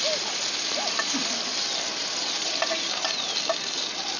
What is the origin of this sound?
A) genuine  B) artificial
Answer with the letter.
B